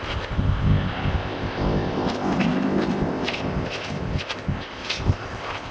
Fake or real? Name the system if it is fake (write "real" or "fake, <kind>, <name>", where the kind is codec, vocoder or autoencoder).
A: fake, codec, ZipCodec